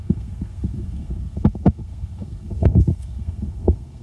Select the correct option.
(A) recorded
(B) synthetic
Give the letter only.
B